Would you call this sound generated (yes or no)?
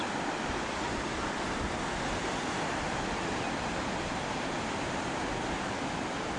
no